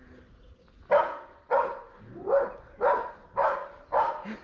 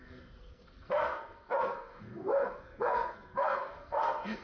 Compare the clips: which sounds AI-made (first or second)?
second